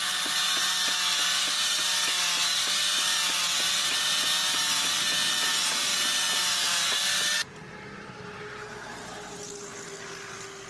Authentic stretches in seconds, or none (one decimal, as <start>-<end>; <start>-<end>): 0.0-10.7